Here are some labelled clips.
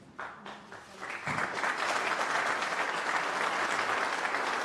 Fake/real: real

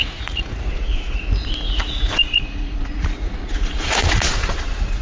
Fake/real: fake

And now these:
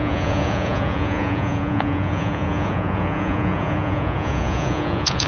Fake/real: fake